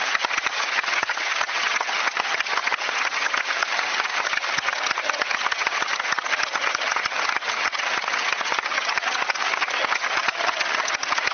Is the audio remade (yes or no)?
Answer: yes